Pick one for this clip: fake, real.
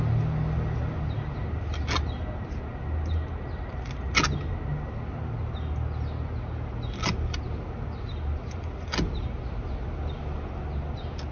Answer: real